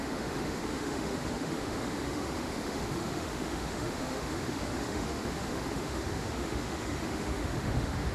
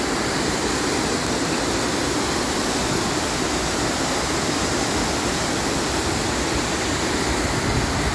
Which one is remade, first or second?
first